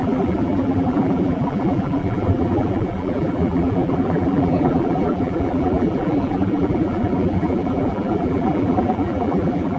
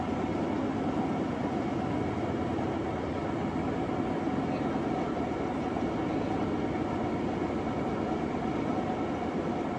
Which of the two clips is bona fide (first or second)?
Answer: second